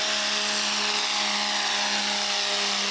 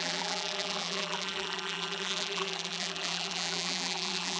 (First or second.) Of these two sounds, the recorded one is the first